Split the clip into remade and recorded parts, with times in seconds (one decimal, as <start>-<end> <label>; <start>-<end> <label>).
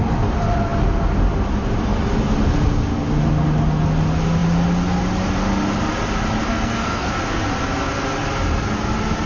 0.0-6.5 recorded; 6.5-7.1 remade; 7.1-9.3 recorded